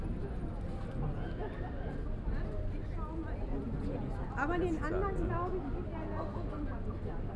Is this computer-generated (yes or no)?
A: no